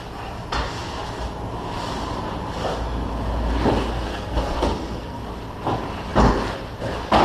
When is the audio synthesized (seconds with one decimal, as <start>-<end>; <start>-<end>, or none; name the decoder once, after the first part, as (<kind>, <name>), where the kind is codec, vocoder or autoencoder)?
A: 4.1-5.2 (codec, SNAC)